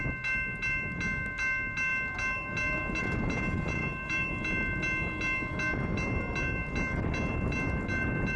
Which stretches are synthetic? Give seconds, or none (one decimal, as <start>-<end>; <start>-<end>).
3.8-4.3